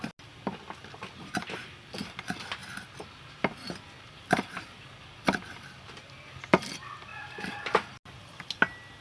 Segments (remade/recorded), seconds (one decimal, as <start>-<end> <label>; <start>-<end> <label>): 0.0-9.0 recorded